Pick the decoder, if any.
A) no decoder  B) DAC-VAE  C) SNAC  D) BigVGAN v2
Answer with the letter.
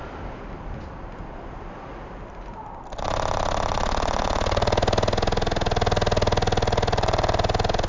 A